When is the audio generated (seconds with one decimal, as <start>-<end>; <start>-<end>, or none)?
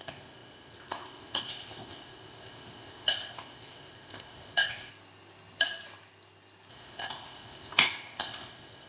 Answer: 0.0-4.9; 6.7-8.9